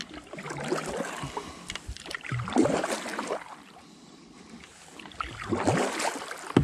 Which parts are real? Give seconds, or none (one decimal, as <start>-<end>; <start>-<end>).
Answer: 0.0-6.6